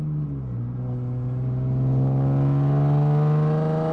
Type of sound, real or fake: real